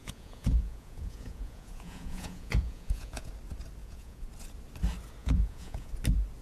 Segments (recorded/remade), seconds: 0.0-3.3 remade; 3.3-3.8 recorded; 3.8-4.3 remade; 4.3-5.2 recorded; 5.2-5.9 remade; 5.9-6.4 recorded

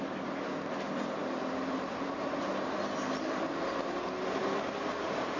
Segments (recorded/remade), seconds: 0.0-5.4 recorded

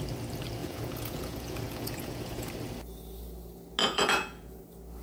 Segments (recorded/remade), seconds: 0.0-0.6 recorded; 0.6-2.5 remade; 2.5-3.8 recorded; 3.8-4.6 remade; 4.6-5.0 recorded

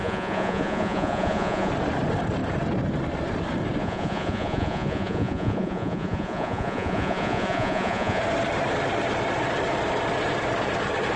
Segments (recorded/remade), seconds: 0.0-1.7 remade; 1.7-3.8 recorded; 3.8-8.2 remade; 8.2-11.2 recorded